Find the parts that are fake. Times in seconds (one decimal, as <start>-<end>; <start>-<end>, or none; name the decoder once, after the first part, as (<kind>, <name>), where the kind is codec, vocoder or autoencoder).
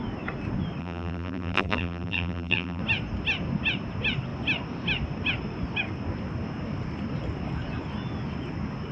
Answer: 0.8-2.8 (vocoder, BigVGAN v2)